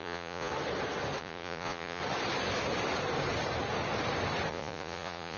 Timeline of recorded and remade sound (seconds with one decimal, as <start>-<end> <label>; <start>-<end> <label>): 0.0-0.5 remade; 0.5-1.2 recorded; 1.2-2.0 remade; 2.0-4.5 recorded; 4.5-5.4 remade